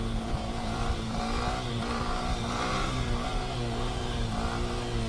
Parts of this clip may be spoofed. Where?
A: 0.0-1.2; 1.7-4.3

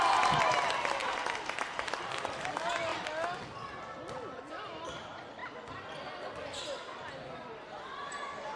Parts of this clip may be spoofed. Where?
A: 1.0-2.2

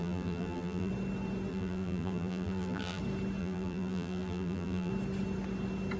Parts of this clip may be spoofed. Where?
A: 0.0-0.9; 1.5-3.0; 3.4-4.9

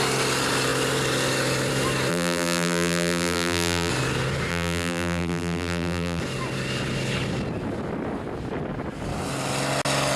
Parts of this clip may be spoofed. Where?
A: 2.1-3.9; 4.5-6.2

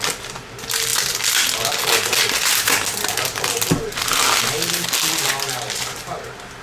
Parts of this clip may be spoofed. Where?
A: none